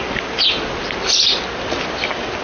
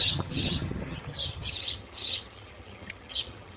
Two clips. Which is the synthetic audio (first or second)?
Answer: second